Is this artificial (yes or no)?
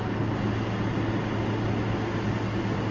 no